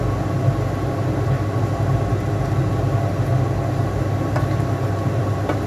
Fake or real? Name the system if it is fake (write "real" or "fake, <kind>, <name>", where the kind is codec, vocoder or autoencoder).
real